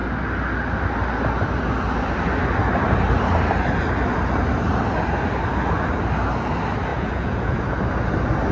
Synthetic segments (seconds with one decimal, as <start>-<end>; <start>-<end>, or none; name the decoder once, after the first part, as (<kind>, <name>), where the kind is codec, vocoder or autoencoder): 6.9-7.6 (vocoder, Vocos)

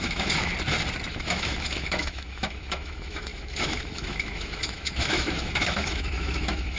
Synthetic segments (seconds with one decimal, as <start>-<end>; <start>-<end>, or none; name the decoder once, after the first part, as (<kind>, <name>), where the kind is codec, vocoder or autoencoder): 0.0-0.5 (autoencoder, DAC-VAE); 1.1-6.8

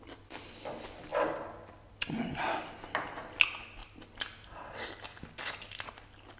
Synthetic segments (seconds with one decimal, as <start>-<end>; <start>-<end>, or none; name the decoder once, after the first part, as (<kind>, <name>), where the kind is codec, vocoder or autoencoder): none

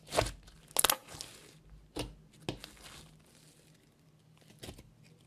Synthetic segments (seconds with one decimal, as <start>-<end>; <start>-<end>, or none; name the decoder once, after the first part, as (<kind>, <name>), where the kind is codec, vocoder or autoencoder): none

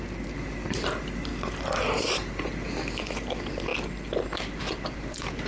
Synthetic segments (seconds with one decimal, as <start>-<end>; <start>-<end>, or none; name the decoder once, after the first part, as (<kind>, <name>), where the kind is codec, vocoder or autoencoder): 0.0-1.3 (vocoder, BigVGAN v2); 2.4-3.7; 4.6-5.5

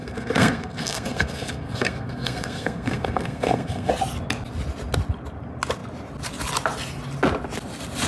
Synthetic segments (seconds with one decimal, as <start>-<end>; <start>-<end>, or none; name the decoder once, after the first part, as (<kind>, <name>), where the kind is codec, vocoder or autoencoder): 0.0-3.9 (codec, SNAC)

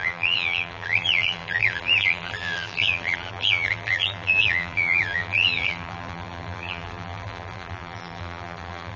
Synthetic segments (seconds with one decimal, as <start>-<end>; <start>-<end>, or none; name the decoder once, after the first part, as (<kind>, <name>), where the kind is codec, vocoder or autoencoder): 0.0-9.0 (vocoder, BigVGAN v2)

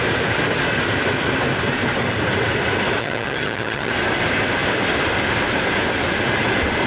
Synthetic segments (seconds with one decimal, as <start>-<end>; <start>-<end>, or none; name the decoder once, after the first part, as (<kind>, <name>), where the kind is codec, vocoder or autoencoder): 3.0-3.9 (vocoder, HiFi-GAN)